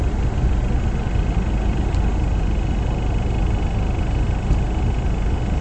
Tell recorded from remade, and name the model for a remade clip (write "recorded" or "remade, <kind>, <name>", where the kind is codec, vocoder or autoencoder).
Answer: recorded